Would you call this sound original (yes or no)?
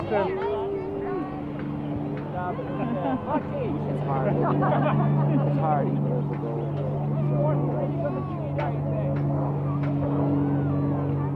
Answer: yes